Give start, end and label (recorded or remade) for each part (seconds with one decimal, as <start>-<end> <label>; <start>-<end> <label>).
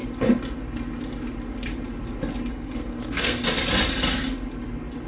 0.0-2.5 recorded; 2.5-3.4 remade; 3.4-5.1 recorded